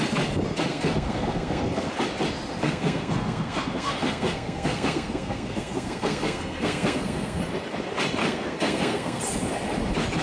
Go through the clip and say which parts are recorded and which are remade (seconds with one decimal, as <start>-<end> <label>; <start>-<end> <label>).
0.0-0.7 recorded; 0.7-1.9 remade; 1.9-2.6 recorded; 2.6-7.4 remade; 7.4-8.2 recorded; 8.2-9.2 remade; 9.2-10.2 recorded